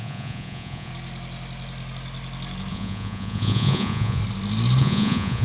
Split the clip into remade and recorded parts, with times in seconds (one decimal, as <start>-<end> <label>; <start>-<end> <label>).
0.0-0.9 remade; 0.9-2.7 recorded; 2.7-4.2 remade; 4.2-4.8 recorded; 4.8-5.4 remade